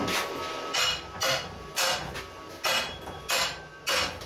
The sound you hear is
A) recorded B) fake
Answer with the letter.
A